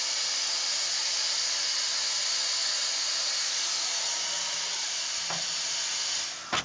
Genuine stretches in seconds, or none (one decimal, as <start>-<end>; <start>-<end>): 0.0-6.6